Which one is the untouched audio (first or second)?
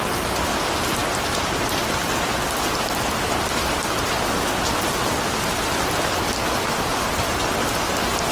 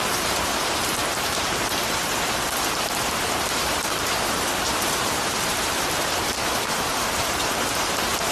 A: first